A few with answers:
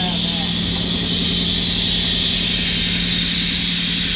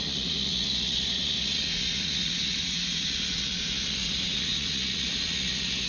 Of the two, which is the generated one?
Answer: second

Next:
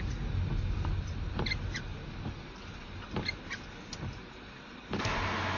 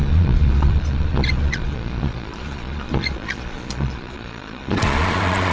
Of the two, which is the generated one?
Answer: second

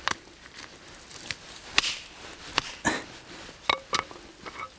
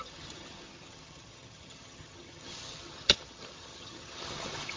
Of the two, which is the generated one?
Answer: second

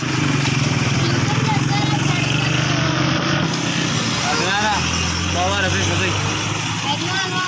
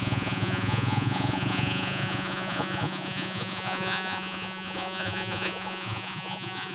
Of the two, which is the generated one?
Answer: second